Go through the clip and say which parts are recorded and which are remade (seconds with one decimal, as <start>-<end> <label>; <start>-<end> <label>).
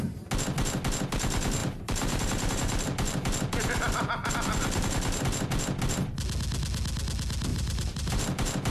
0.0-1.6 recorded; 1.6-4.3 remade; 4.3-7.5 recorded; 7.5-8.7 remade